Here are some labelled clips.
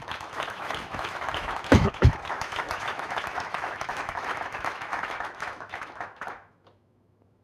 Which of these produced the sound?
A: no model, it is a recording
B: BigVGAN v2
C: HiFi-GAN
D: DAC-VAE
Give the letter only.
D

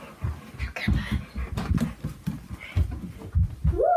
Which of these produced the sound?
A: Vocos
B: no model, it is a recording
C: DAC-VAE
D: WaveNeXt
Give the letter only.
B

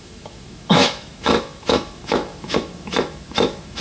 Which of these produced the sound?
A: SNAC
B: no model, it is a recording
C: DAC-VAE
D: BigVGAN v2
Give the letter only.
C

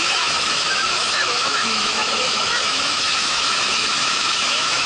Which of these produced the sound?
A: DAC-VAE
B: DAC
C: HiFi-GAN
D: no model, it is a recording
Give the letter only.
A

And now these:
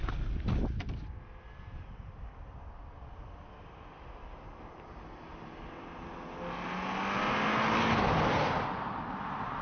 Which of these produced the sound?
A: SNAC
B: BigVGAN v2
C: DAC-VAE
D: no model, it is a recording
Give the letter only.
D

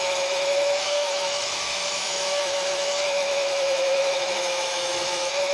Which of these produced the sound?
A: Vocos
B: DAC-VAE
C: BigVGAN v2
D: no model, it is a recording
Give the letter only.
B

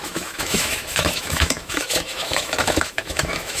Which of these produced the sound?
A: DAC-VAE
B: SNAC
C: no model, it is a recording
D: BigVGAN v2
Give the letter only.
A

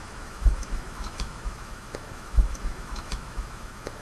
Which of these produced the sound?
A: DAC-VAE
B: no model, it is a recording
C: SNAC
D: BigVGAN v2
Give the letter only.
A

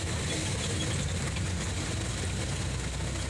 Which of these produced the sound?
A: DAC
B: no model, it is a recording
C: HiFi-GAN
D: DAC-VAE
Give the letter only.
B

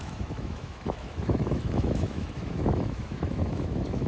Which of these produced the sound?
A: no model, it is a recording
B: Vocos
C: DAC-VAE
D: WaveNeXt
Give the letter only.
C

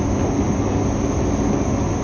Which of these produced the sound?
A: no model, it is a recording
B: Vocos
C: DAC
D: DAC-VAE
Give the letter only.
A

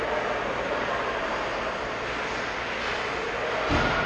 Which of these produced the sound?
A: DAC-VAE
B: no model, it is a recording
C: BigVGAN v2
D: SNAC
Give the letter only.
B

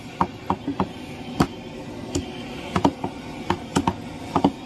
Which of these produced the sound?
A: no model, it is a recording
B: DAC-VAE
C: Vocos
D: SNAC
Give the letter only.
A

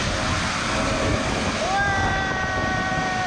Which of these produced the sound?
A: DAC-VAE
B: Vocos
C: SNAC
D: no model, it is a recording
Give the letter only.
D